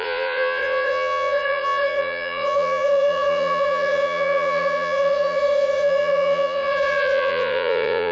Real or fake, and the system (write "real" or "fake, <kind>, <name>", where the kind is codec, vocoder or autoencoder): fake, vocoder, Vocos